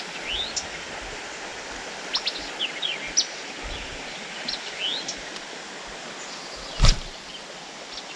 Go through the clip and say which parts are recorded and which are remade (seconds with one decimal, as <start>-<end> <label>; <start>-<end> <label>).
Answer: 0.0-8.2 recorded